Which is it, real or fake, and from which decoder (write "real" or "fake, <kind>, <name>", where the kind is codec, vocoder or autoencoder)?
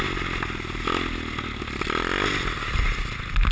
real